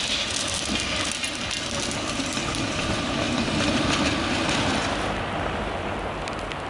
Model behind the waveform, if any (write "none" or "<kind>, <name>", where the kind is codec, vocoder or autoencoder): none